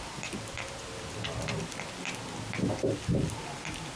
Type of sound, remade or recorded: recorded